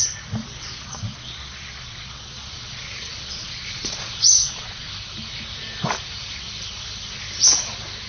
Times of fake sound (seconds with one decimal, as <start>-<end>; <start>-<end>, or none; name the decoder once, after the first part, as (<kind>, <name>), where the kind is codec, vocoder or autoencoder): 0.4-4.9 (vocoder, Vocos)